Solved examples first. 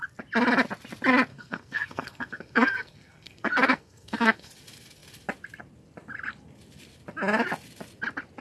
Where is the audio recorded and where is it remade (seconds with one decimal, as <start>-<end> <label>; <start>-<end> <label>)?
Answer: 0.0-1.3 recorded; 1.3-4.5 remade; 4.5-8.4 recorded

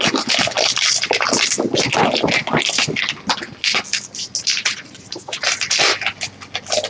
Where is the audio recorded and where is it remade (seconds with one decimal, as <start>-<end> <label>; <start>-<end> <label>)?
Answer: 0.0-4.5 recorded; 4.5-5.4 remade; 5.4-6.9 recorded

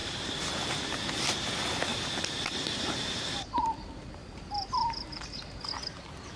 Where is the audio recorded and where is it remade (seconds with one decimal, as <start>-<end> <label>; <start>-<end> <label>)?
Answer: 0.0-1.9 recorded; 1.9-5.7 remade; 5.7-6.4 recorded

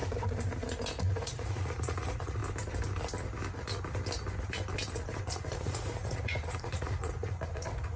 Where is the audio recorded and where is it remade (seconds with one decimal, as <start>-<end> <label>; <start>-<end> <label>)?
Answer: 0.0-1.1 recorded; 1.1-2.4 remade; 2.4-5.2 recorded; 5.2-8.0 remade